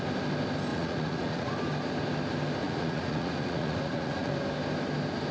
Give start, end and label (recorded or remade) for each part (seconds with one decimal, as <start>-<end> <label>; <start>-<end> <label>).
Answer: 0.0-0.7 recorded; 0.7-1.5 remade; 1.5-2.6 recorded; 2.6-4.3 remade; 4.3-5.3 recorded